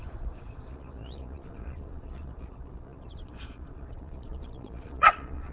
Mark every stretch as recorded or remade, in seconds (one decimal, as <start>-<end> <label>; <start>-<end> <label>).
0.0-5.5 remade